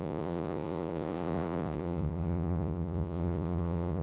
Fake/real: fake